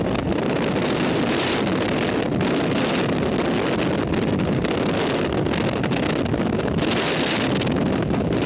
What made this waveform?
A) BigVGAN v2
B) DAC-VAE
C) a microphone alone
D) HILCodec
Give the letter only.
C